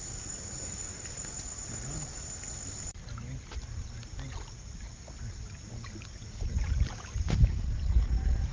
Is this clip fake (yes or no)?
no